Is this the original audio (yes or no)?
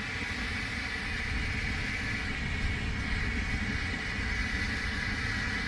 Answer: yes